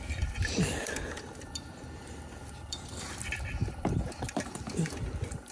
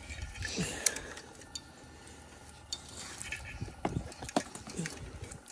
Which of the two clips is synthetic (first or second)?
first